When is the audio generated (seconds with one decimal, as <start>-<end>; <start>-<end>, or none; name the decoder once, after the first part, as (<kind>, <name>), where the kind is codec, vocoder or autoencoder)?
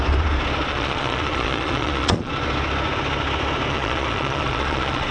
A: 0.7-2.3 (vocoder, Vocos); 3.7-5.1